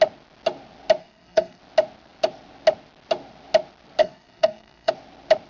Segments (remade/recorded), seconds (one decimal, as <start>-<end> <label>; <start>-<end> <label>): 0.0-1.0 recorded; 1.0-1.6 remade; 1.6-4.0 recorded; 4.0-4.9 remade; 4.9-5.5 recorded